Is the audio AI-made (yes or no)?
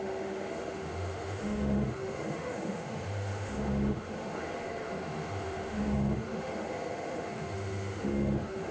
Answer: yes